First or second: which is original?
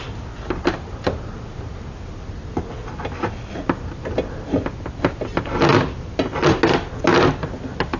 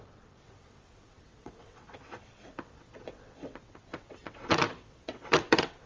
first